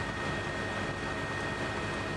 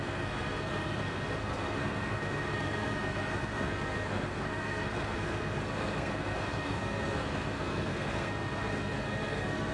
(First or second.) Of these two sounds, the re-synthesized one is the second